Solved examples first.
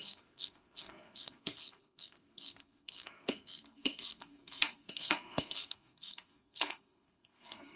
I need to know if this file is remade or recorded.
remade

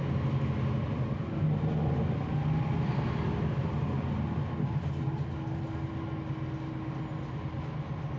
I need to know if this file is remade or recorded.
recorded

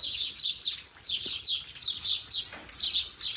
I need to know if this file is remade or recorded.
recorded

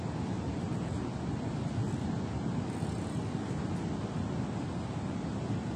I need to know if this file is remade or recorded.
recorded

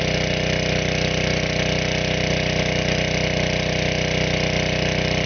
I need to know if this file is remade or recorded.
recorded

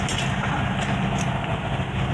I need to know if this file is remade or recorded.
recorded